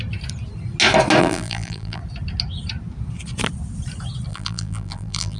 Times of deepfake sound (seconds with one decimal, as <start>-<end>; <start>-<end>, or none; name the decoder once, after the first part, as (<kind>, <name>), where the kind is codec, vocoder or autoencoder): 1.2-2.0 (vocoder, BigVGAN v2); 4.3-5.4